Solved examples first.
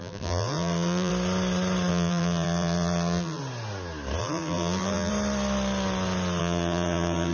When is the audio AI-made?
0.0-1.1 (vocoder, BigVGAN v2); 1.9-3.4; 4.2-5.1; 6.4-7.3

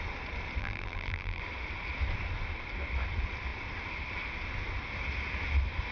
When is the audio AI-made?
0.6-1.4 (vocoder, BigVGAN v2)

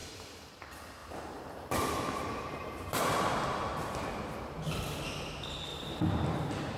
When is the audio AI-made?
0.0-0.6 (vocoder, BigVGAN v2); 1.0-3.0; 3.7-4.3; 5.7-6.8

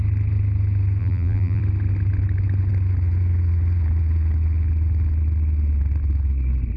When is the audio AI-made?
1.0-1.6 (vocoder, BigVGAN v2)

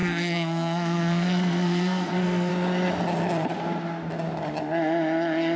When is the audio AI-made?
0.0-2.5 (codec, SNAC)

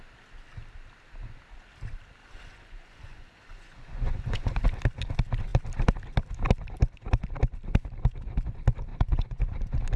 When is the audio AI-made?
2.2-4.6 (vocoder, Vocos); 8.9-9.4

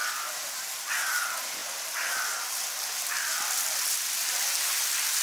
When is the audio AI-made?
1.6-3.7 (vocoder, BigVGAN v2)